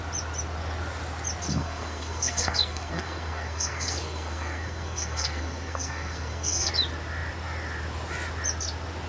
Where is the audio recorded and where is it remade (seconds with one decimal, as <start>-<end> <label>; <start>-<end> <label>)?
0.0-1.5 recorded; 1.5-6.7 remade; 6.7-9.1 recorded